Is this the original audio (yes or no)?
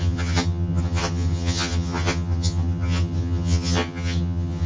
no